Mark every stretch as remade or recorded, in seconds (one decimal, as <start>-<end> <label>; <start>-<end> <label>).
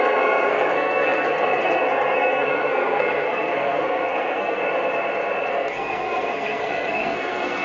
0.0-4.6 remade; 4.6-5.5 recorded; 5.5-7.6 remade